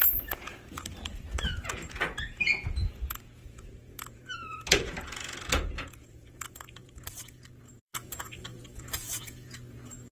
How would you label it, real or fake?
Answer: fake